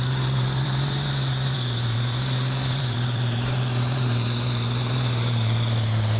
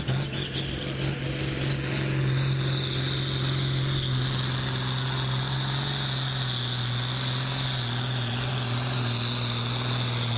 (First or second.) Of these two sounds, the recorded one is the second